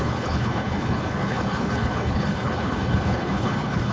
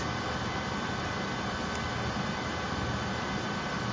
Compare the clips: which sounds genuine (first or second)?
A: second